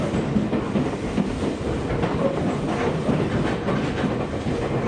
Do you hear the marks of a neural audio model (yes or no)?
no